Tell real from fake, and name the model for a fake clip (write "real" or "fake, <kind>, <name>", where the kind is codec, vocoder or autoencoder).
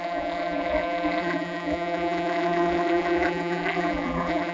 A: fake, vocoder, BigVGAN v2